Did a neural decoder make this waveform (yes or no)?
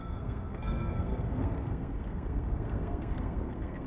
yes